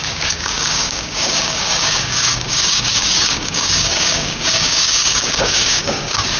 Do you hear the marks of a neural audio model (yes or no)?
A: yes